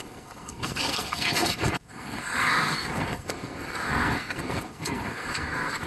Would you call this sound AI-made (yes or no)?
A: yes